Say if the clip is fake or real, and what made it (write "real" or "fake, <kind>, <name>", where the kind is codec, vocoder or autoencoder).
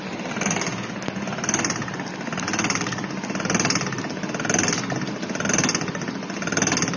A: real